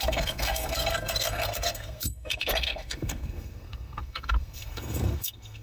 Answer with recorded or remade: remade